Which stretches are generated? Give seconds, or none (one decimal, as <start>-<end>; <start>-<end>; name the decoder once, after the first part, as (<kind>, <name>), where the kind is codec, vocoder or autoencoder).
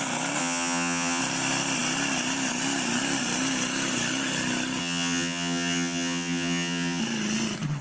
0.4-1.2 (vocoder, HiFi-GAN); 4.8-7.0